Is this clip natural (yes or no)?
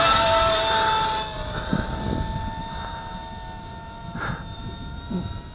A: yes